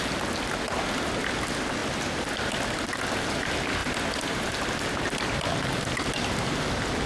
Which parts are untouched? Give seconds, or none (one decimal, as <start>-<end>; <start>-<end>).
0.0-7.1